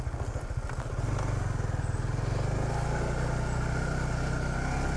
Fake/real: real